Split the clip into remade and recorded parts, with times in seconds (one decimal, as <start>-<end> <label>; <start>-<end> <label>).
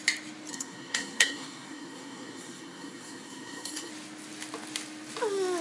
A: 0.0-0.5 recorded; 0.5-3.9 remade; 3.9-5.6 recorded